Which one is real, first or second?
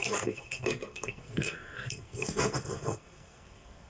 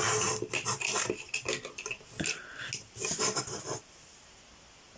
second